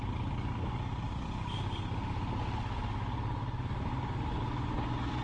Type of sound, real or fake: real